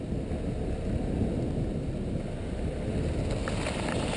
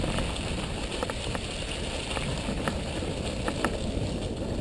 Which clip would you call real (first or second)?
first